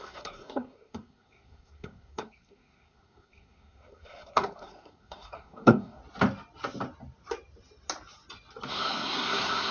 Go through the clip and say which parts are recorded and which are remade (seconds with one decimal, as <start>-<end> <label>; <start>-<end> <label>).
0.0-6.0 remade; 6.0-8.7 recorded; 8.7-9.7 remade